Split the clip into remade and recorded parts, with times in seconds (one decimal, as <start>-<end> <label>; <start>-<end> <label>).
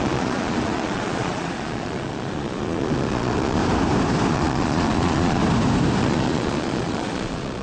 0.0-3.6 remade; 3.6-4.3 recorded; 4.3-5.4 remade; 5.4-6.0 recorded; 6.0-7.6 remade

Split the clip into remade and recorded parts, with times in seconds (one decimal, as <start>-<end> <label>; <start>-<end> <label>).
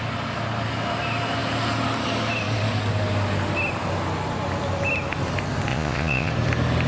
0.0-5.7 recorded; 5.7-6.3 remade; 6.3-6.9 recorded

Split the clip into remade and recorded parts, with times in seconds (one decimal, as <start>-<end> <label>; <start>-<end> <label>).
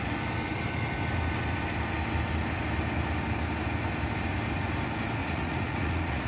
0.0-5.2 recorded; 5.2-6.3 remade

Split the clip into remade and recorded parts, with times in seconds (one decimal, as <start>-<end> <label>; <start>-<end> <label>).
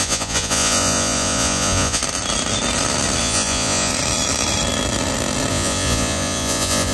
0.0-2.0 remade; 2.0-3.2 recorded; 3.2-3.9 remade; 3.9-5.5 recorded; 5.5-6.9 remade